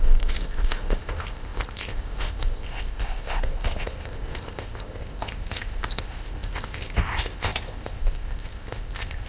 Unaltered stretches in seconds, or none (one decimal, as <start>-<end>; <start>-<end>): none